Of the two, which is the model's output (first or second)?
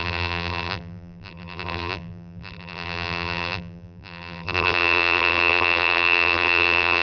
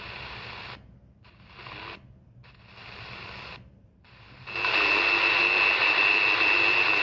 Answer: first